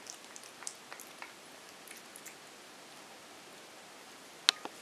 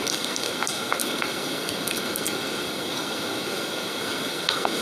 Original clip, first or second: first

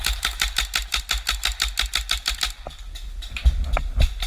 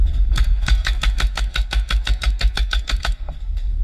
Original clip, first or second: first